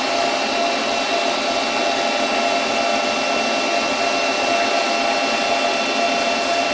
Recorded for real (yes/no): yes